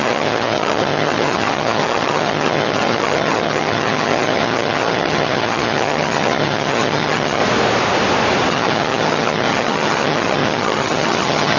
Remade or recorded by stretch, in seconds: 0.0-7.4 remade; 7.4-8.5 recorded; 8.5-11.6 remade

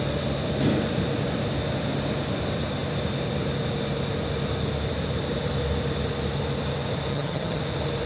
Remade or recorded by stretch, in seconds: 0.0-7.1 recorded; 7.1-7.6 remade; 7.6-8.1 recorded

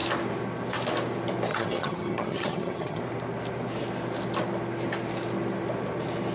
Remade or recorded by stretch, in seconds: 0.0-1.5 recorded; 1.5-3.0 remade; 3.0-6.3 recorded

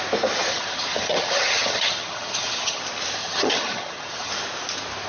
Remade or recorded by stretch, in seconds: 0.0-0.5 recorded; 0.5-2.8 remade; 2.8-3.2 recorded; 3.2-4.3 remade; 4.3-5.1 recorded

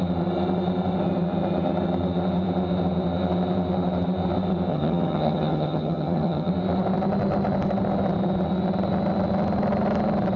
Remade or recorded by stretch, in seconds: 0.0-4.7 recorded; 4.7-6.5 remade; 6.5-10.4 recorded